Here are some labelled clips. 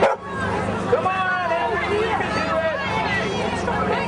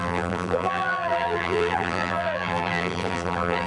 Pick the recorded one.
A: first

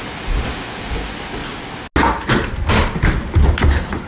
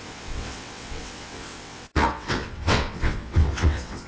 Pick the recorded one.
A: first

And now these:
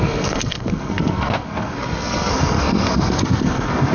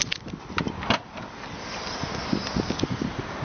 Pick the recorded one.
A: second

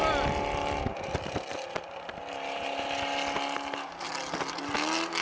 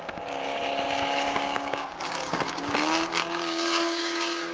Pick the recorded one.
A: first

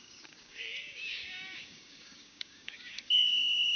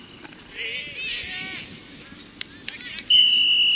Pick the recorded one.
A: second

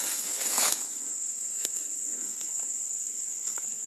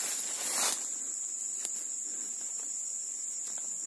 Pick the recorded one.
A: second